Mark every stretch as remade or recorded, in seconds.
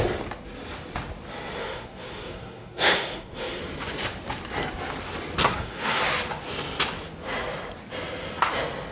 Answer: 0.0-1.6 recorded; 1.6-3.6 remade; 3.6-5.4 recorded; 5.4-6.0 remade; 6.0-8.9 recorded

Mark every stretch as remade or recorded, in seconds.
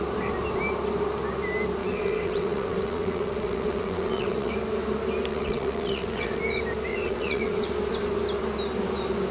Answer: 0.0-1.8 recorded; 1.8-4.5 remade; 4.5-5.3 recorded; 5.3-6.4 remade; 6.4-6.9 recorded; 6.9-7.7 remade; 7.7-9.3 recorded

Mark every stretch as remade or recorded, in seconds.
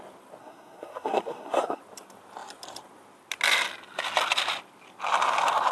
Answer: 0.0-0.4 recorded; 0.4-1.8 remade; 1.8-5.7 recorded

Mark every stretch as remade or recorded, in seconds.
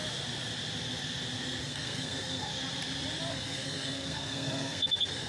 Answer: 0.0-1.6 recorded; 1.6-2.5 remade; 2.5-3.3 recorded; 3.3-5.3 remade